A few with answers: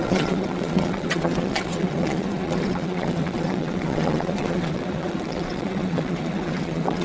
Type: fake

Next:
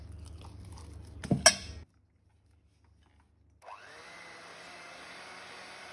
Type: real